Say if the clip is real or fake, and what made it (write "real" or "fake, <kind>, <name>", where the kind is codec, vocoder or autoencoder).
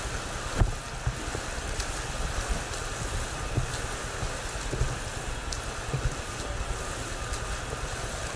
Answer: real